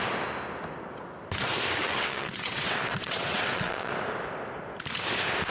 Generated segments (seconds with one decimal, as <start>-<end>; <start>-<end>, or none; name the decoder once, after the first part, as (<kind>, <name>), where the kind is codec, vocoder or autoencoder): 1.8-3.9 (vocoder, WaveNeXt)